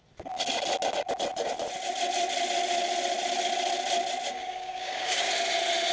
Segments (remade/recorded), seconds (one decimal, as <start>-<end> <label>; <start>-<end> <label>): 0.0-4.4 recorded; 4.4-5.3 remade; 5.3-5.9 recorded